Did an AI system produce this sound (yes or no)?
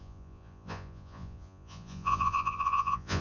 yes